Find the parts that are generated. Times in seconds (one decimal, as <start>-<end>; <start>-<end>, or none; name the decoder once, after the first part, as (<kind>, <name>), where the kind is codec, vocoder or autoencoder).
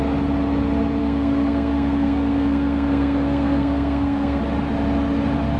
1.0-4.4 (codec, SNAC)